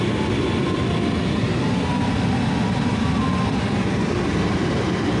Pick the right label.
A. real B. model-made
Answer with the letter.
A